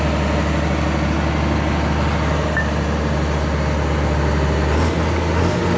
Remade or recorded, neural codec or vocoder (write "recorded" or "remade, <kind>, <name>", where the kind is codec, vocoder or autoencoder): recorded